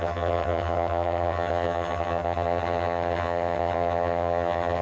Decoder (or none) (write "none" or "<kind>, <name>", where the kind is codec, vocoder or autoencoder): vocoder, HiFi-GAN